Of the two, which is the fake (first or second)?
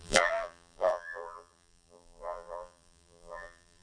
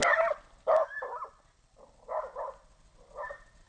first